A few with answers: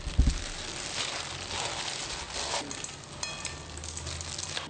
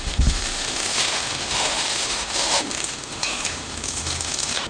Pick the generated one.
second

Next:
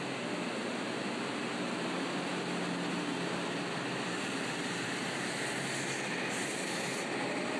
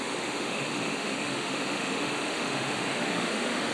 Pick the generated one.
second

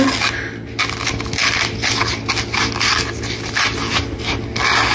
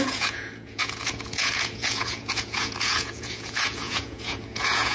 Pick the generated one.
second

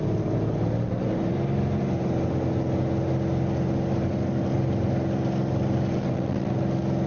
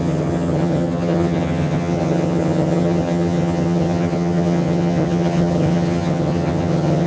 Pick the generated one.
second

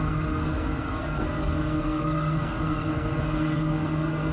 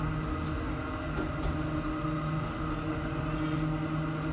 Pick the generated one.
first